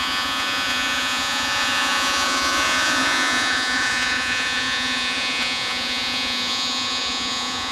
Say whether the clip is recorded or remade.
remade